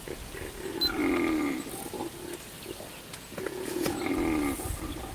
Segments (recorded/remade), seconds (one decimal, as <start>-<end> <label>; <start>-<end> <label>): 0.0-3.1 recorded; 3.1-4.0 remade; 4.0-5.1 recorded